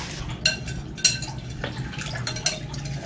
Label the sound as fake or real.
real